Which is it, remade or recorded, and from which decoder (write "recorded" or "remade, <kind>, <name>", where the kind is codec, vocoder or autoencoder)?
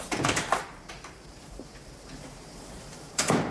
remade, vocoder, BigVGAN v2